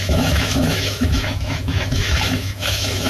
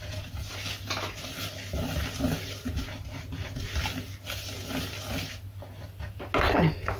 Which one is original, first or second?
second